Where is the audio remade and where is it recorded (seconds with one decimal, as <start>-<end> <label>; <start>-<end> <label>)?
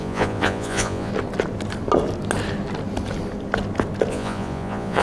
0.0-1.1 remade; 1.1-4.1 recorded; 4.1-5.0 remade